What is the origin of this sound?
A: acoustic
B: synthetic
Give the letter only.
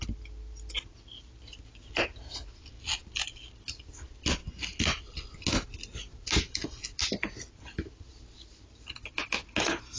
A